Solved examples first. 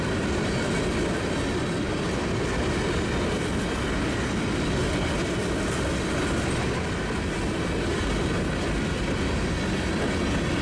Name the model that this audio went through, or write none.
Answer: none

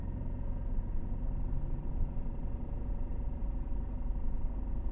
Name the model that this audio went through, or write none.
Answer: none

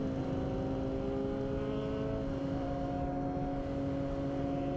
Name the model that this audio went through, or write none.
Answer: none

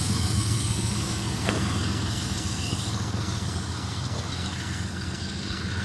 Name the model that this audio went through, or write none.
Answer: codec, SNAC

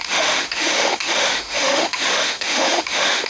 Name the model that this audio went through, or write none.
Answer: autoencoder, DAC-VAE